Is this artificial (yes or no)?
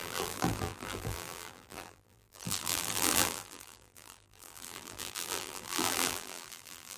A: yes